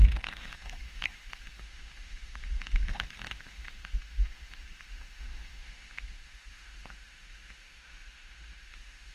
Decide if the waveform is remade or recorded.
remade